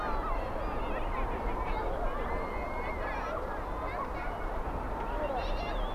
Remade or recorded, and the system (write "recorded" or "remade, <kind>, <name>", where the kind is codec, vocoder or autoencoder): recorded